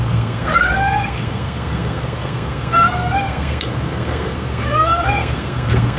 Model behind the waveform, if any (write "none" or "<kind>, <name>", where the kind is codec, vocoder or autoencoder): codec, SNAC